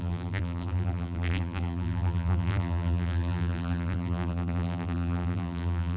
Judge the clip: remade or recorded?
remade